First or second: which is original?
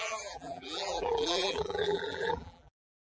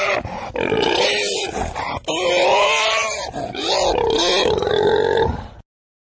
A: second